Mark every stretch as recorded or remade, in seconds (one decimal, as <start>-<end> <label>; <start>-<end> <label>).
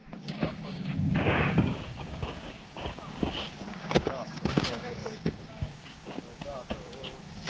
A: 0.0-7.5 remade